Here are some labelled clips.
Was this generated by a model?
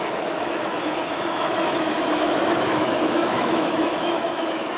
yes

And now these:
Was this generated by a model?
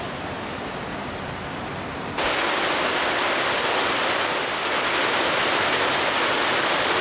no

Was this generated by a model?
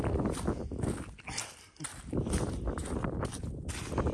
no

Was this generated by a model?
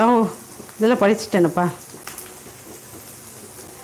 no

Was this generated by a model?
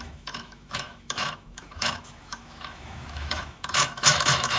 yes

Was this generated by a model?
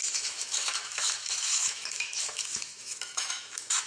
yes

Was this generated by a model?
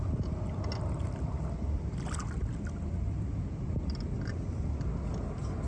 no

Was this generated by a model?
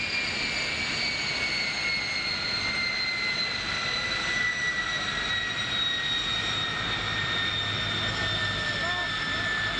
no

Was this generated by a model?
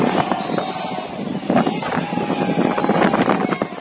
no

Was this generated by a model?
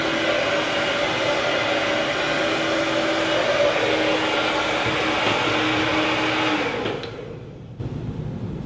no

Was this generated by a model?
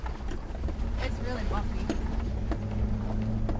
no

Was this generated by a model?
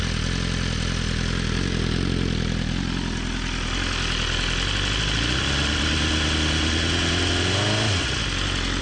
no